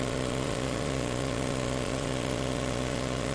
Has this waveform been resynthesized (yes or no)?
yes